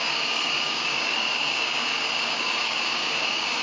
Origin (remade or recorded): remade